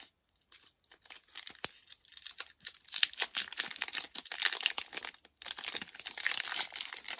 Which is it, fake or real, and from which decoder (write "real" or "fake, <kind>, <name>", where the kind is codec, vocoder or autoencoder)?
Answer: real